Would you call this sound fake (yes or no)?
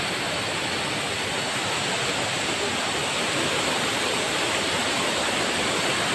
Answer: no